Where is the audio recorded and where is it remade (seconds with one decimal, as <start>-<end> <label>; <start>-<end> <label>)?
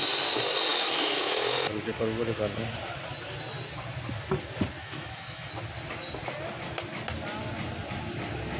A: 0.0-0.7 recorded; 0.7-1.5 remade; 1.5-4.8 recorded; 4.8-5.5 remade; 5.5-8.6 recorded